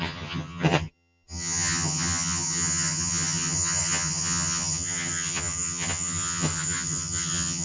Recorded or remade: remade